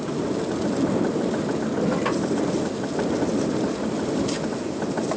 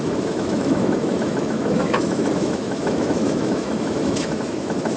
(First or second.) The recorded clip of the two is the first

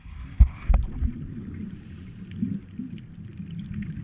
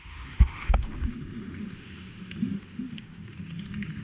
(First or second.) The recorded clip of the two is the first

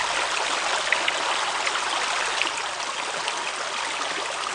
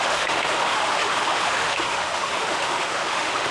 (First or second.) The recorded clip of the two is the first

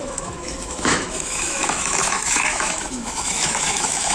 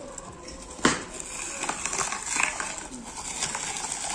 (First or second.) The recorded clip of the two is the second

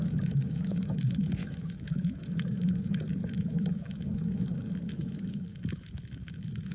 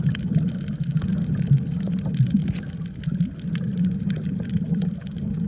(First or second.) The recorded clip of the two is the second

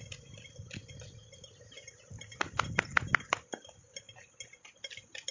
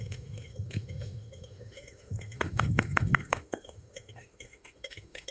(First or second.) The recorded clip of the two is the first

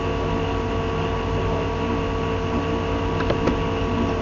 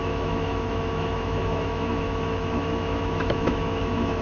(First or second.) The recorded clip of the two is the first